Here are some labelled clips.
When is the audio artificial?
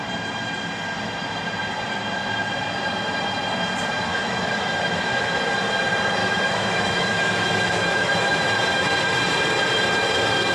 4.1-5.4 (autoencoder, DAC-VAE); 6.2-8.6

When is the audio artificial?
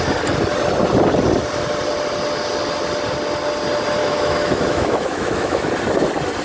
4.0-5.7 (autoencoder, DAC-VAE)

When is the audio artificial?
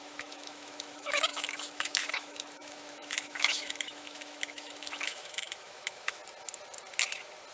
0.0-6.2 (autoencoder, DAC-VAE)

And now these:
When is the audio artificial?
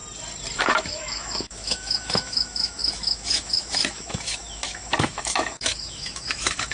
0.6-6.7 (autoencoder, DAC-VAE)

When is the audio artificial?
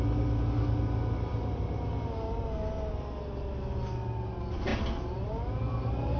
none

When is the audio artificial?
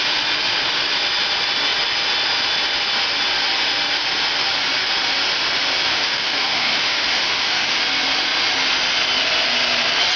5.9-7.8 (autoencoder, DAC-VAE)